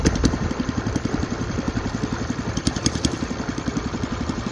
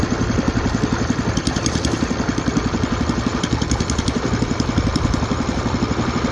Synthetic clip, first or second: first